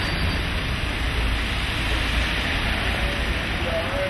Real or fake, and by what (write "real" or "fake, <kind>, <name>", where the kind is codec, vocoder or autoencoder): real